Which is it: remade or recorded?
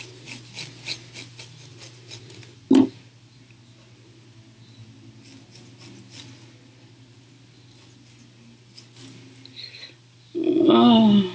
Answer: recorded